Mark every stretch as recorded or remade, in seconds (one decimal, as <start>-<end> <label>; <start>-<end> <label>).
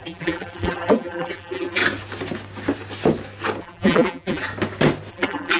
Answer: 0.0-1.8 remade; 1.8-3.6 recorded; 3.6-4.5 remade; 4.5-5.1 recorded; 5.1-5.6 remade